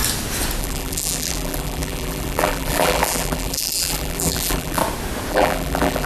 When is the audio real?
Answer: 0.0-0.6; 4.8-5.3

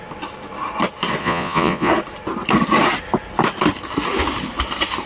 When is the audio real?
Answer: 0.0-1.2; 1.9-5.1

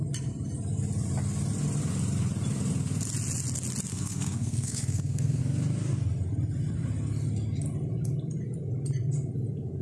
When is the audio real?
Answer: 0.0-3.9; 5.4-9.8

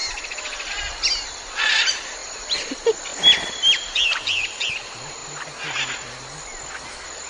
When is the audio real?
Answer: 0.0-2.2; 2.7-3.1; 4.7-7.3

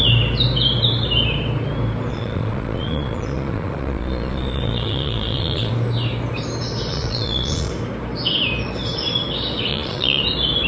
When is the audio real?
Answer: 0.0-2.1; 5.7-6.9; 7.7-9.7; 10.2-10.7

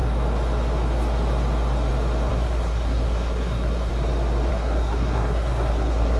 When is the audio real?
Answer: 0.0-2.3; 3.9-4.5

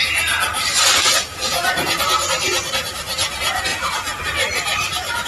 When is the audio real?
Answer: 0.0-1.3; 2.0-3.7; 4.2-5.3